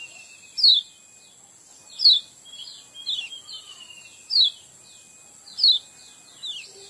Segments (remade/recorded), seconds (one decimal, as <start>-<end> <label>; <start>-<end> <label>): 0.0-6.9 recorded